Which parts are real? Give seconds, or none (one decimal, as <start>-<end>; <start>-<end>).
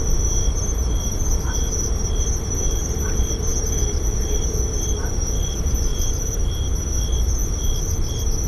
0.0-5.9; 6.8-8.5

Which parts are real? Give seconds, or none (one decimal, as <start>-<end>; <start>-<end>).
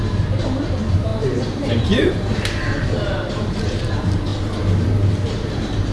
4.3-5.5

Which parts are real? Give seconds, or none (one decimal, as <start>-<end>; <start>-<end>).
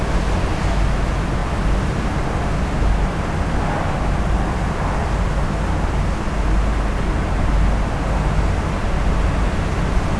0.0-10.2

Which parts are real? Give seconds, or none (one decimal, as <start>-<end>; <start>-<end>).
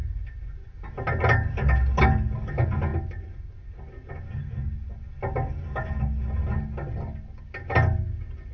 0.0-8.5